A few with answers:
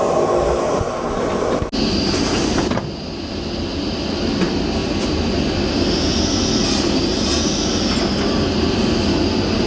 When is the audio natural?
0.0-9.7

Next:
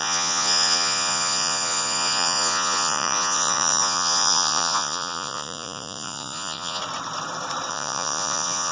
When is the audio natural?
6.8-7.7

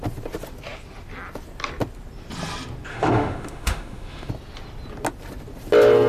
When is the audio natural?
0.0-2.9; 4.3-6.1